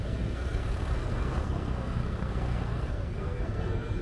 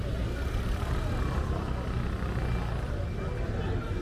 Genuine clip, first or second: second